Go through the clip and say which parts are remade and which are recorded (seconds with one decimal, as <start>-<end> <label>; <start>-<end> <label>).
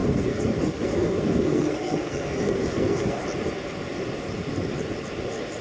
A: 0.0-3.2 remade; 3.2-5.6 recorded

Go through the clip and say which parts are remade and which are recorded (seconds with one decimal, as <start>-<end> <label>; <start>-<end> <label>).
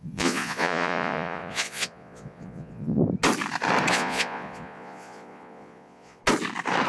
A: 0.0-3.0 remade; 3.0-3.9 recorded; 3.9-6.2 remade; 6.2-6.9 recorded